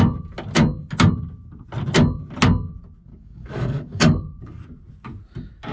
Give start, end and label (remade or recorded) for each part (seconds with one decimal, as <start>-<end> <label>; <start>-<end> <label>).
0.0-3.1 recorded; 3.1-4.6 remade; 4.6-5.7 recorded

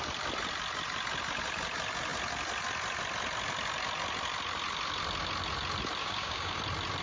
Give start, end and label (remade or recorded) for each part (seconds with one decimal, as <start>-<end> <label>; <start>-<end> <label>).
0.0-6.0 recorded; 6.0-6.6 remade; 6.6-7.0 recorded

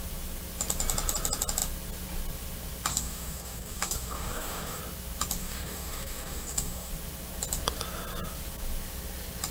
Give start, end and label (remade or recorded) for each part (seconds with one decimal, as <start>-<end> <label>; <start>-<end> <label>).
0.0-2.9 recorded; 2.9-4.8 remade; 4.8-5.4 recorded; 5.4-6.9 remade; 6.9-9.5 recorded

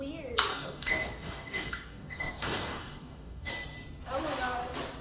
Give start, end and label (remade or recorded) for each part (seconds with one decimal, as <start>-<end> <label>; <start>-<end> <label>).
0.0-0.5 recorded; 0.5-3.5 remade; 3.5-5.0 recorded